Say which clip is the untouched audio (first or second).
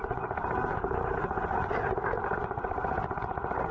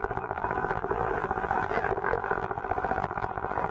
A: first